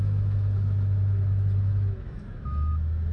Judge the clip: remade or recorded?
remade